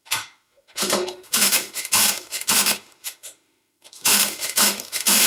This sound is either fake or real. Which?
fake